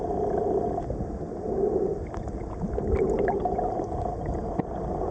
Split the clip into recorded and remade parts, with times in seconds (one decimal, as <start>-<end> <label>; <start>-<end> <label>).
0.0-5.1 recorded